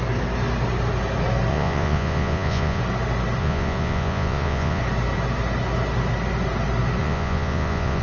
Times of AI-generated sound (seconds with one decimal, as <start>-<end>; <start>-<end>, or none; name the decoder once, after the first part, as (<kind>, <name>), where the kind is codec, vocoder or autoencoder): 1.5-2.8 (vocoder, Vocos); 3.4-4.8; 7.0-8.0